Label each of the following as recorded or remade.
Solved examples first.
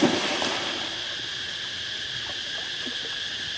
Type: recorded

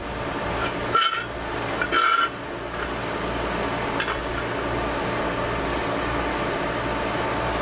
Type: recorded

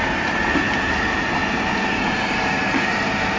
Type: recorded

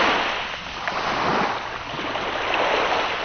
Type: recorded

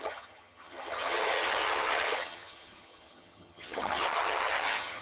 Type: remade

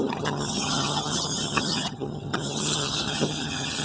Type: remade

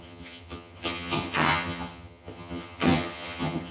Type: remade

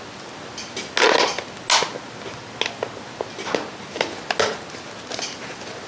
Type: recorded